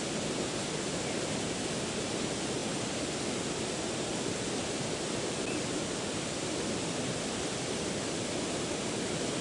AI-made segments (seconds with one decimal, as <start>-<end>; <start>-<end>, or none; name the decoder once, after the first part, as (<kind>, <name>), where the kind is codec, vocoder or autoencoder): none